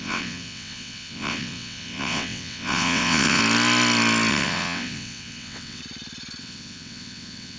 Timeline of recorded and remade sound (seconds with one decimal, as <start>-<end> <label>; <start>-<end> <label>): 0.0-3.4 remade; 3.4-4.3 recorded; 4.3-5.8 remade; 5.8-6.4 recorded; 6.4-7.6 remade

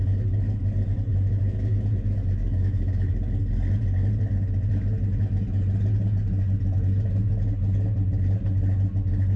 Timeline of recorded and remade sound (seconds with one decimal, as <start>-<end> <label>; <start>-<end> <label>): 0.0-1.1 recorded; 1.1-3.1 remade; 3.1-9.4 recorded

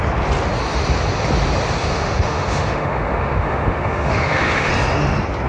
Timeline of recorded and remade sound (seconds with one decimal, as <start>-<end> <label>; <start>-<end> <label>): 0.0-1.8 recorded; 1.8-4.7 remade; 4.7-5.5 recorded

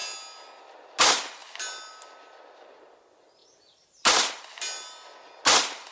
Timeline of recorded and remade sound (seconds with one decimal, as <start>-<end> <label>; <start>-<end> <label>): 0.0-3.4 recorded; 3.4-4.3 remade; 4.3-5.9 recorded

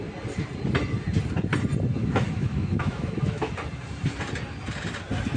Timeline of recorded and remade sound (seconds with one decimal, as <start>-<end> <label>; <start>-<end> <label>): 0.0-2.0 recorded; 2.0-3.5 remade; 3.5-5.4 recorded